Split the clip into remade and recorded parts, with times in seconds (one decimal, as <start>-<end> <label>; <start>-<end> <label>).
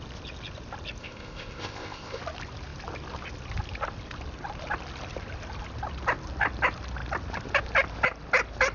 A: 0.0-1.0 recorded; 1.0-2.2 remade; 2.2-8.7 recorded